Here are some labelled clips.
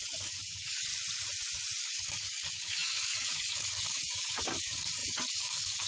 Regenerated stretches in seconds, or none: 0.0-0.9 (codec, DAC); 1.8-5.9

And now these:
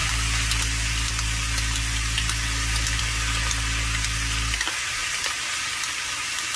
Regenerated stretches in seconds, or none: none

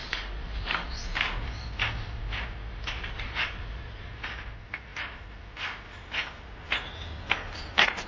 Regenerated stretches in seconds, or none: 0.0-0.9 (codec, DAC); 2.6-4.1

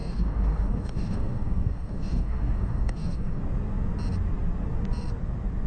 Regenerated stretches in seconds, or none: 0.0-3.4 (codec, DAC)

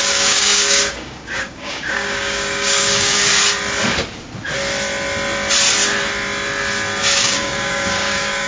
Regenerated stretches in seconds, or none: 0.0-3.3 (codec, DAC); 7.0-8.5

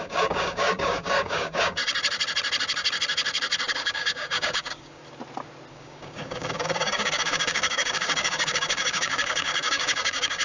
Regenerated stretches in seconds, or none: 0.0-1.8 (codec, DAC); 3.7-5.0; 5.7-10.4

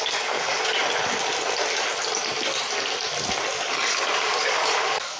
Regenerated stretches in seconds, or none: 0.0-0.8 (codec, DAC); 3.7-5.2

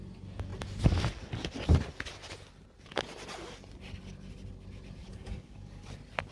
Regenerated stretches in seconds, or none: 5.0-5.8 (codec, DAC)